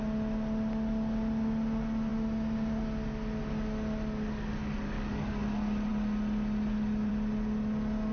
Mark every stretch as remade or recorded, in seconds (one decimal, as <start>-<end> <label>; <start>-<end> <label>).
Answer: 0.0-4.6 recorded; 4.6-5.4 remade; 5.4-8.1 recorded